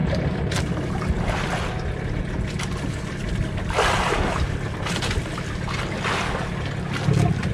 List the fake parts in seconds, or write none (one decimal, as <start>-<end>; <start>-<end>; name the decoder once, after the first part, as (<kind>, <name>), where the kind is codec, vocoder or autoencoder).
none